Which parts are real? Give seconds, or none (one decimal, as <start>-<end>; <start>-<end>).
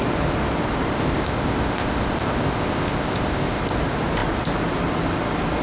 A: 0.0-0.9; 3.6-5.6